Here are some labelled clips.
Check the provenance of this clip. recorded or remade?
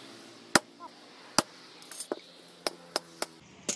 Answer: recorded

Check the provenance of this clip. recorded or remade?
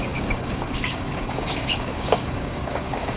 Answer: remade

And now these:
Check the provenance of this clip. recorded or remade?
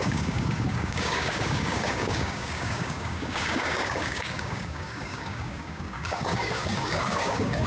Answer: remade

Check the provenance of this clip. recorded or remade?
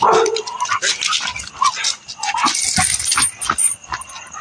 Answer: recorded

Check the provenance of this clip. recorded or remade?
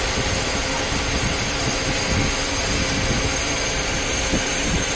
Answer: recorded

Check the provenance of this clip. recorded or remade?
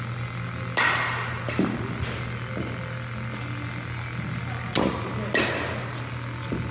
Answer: recorded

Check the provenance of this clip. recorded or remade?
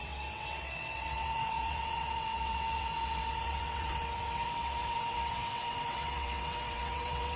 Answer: remade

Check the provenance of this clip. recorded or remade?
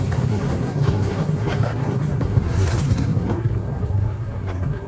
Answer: remade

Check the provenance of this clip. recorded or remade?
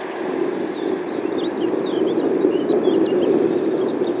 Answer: recorded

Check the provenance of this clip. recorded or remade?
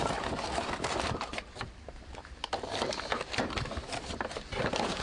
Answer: recorded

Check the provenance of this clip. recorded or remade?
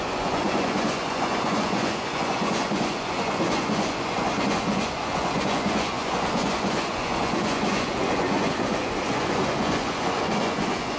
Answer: remade